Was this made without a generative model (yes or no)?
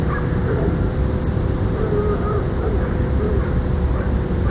yes